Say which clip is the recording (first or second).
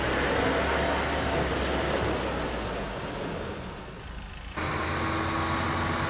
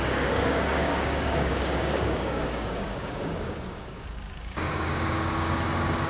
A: first